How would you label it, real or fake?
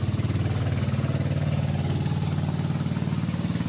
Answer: real